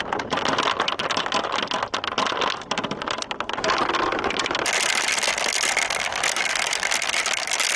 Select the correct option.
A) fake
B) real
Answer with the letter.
B